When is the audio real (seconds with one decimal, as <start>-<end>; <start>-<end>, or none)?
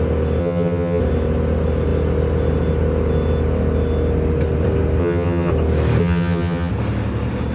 0.0-0.4; 1.0-5.0; 5.5-6.0; 6.7-7.5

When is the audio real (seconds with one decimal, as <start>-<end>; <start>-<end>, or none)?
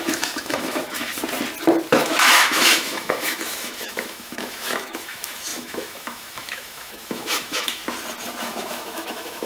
1.1-1.9; 7.8-8.4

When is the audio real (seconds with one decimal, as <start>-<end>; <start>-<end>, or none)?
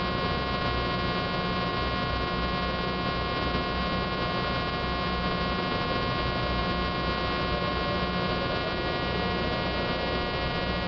0.0-10.9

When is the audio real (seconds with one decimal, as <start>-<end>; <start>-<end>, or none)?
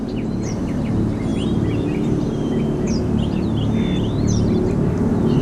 0.0-1.3; 2.6-5.4